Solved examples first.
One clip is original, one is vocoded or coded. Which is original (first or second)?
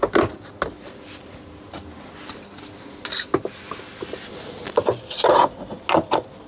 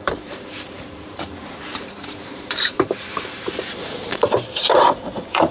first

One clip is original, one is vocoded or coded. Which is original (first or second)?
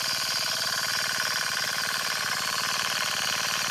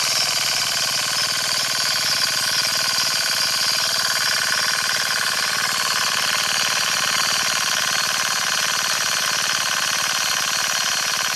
second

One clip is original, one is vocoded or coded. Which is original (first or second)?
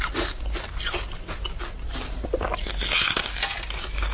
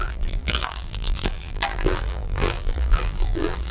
first